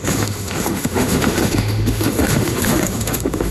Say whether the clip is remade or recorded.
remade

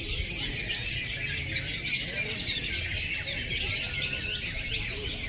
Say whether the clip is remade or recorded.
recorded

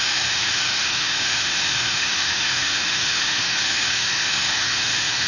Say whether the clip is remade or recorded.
remade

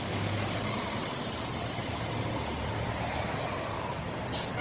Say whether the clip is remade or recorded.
recorded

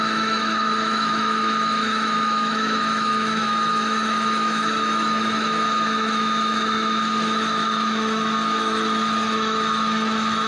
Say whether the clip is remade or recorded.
remade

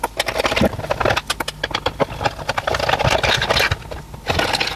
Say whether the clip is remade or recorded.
recorded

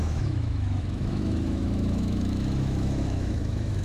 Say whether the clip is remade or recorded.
remade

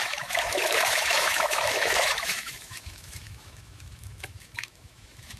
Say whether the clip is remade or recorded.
remade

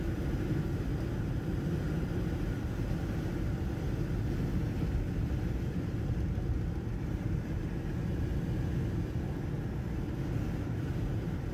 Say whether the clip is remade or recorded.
recorded